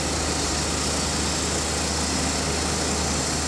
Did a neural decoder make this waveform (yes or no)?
no